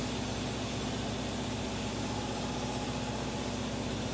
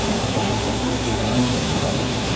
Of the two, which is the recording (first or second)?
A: first